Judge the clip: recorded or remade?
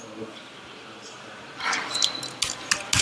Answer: recorded